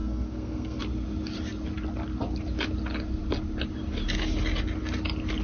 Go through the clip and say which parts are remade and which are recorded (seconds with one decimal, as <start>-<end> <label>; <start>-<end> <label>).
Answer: 0.0-0.8 remade; 0.8-5.4 recorded